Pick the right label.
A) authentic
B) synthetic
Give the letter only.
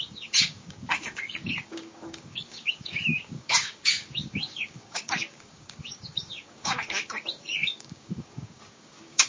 B